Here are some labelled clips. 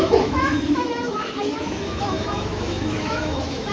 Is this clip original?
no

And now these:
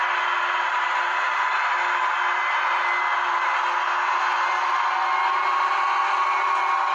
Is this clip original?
yes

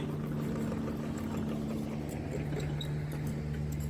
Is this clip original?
yes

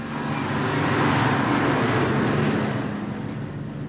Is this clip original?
yes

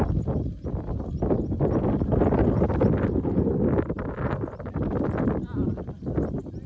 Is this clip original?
yes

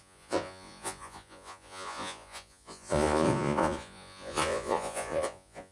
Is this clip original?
no